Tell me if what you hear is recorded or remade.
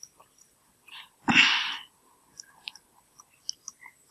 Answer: recorded